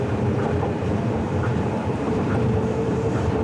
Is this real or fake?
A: fake